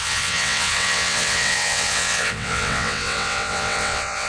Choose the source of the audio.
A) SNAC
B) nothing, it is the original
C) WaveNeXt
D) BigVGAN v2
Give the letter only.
C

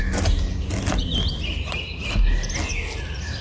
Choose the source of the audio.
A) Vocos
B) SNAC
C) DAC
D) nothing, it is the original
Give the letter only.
D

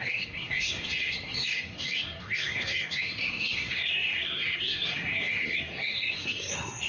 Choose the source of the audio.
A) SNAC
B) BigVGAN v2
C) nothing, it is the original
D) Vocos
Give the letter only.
A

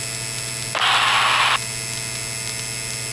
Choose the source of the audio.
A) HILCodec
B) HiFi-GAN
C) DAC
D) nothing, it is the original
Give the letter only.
D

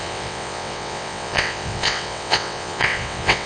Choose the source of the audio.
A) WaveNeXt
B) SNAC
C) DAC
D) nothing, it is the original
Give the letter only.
A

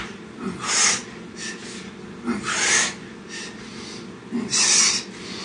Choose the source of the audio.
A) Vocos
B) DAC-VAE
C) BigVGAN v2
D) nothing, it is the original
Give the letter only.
D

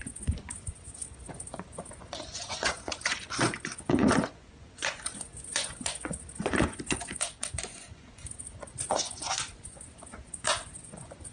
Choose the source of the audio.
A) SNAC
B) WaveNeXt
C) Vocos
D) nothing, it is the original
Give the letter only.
C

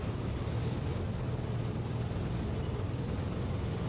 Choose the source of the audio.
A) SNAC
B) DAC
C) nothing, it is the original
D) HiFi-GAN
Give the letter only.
C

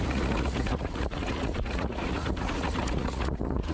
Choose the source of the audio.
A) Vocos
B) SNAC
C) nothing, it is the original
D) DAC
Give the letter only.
A